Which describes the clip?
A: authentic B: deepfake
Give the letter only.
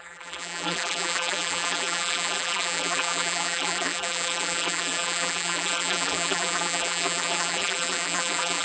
B